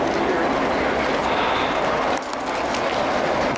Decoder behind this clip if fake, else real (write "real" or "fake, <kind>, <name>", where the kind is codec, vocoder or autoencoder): real